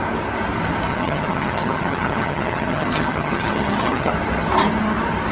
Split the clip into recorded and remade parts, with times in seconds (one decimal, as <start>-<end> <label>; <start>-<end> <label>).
0.0-0.9 recorded; 0.9-4.1 remade; 4.1-5.3 recorded